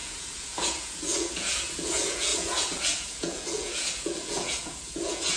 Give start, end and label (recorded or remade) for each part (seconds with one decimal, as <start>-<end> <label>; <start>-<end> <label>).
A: 0.0-5.4 remade